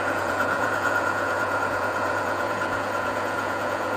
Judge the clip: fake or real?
fake